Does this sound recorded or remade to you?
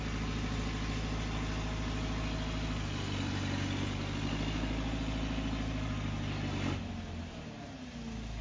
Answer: recorded